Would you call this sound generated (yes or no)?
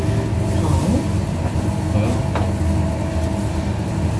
no